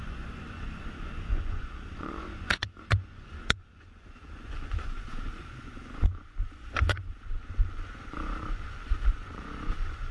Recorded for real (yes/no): no